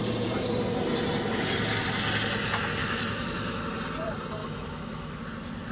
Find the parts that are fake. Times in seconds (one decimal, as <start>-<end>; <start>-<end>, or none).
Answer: 2.8-3.7; 4.4-5.2